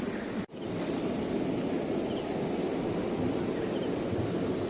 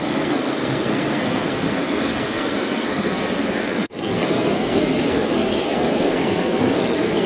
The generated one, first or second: second